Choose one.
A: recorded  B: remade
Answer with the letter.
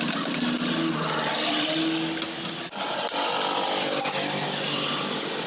A